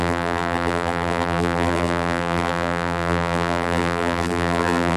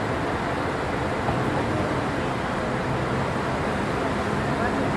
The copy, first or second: first